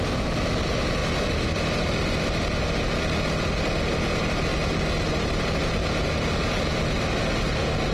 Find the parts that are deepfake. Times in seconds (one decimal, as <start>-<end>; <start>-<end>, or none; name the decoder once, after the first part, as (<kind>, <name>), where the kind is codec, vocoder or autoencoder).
none